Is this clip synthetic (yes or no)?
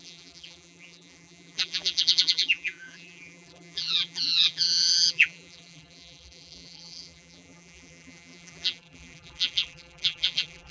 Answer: yes